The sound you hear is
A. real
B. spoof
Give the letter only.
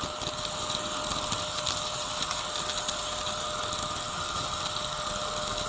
A